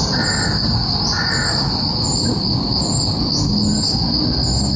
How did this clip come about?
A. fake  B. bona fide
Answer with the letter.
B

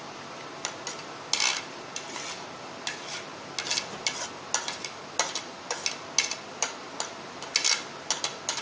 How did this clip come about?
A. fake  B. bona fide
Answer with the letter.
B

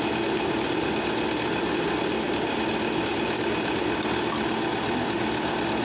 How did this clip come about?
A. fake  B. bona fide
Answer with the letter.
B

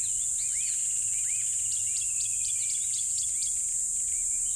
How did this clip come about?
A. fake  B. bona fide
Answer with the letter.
B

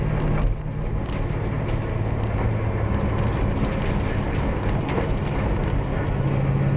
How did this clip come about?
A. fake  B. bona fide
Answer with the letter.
B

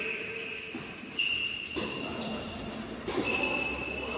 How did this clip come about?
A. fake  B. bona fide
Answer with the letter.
B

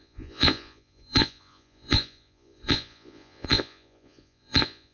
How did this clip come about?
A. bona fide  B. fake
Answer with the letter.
B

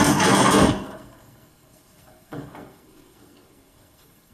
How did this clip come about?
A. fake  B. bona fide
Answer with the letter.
A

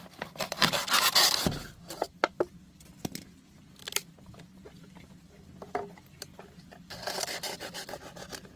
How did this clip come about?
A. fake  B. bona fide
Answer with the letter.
B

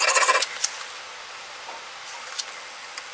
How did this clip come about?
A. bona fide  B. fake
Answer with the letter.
A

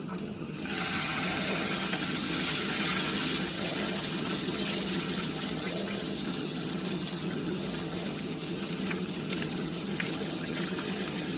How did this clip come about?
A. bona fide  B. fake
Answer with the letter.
B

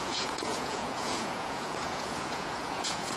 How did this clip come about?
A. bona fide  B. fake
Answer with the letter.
B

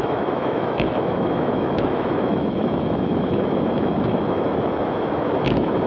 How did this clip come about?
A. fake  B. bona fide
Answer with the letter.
A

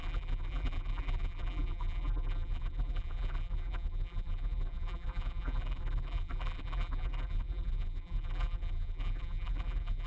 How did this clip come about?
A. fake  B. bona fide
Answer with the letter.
A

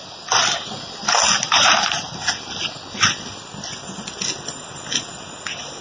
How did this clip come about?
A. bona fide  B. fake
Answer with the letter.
A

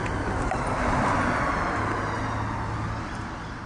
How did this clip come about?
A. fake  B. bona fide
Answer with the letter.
B